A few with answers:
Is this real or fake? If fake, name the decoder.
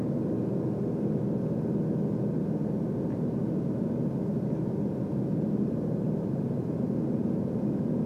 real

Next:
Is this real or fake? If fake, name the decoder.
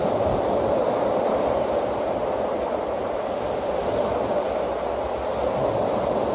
real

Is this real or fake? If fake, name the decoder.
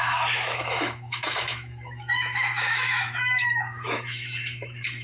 fake, autoencoder, DAC-VAE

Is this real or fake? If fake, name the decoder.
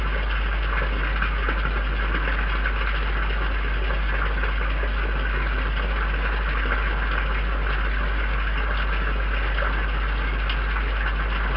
real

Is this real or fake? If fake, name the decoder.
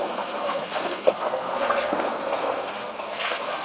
fake, codec, SNAC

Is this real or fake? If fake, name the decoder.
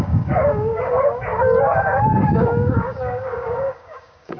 fake, codec, DAC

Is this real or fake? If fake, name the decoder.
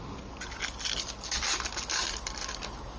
real